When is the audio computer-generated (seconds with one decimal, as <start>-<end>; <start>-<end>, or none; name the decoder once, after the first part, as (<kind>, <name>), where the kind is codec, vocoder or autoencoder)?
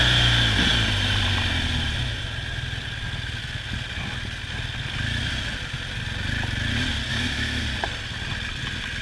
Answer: 7.1-7.6 (autoencoder, DAC-VAE)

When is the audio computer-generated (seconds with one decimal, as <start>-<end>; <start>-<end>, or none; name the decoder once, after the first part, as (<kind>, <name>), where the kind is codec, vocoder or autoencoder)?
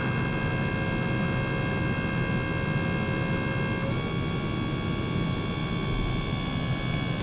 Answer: none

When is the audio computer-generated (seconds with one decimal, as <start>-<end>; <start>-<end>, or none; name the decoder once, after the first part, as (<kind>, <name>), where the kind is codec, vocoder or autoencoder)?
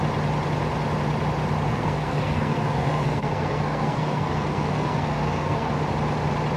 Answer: 1.7-5.7 (codec, SNAC)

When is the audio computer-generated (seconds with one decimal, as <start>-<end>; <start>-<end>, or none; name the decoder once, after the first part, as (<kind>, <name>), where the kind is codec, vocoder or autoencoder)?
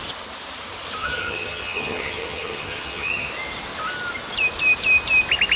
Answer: 1.0-3.3 (vocoder, HiFi-GAN)